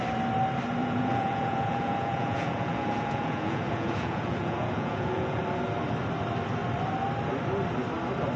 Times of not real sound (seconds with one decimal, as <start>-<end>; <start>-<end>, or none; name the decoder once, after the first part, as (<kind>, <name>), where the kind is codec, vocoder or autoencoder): 0.8-5.4 (vocoder, Vocos)